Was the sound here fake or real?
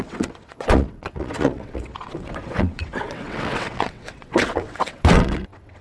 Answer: fake